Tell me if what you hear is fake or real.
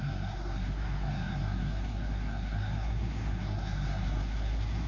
fake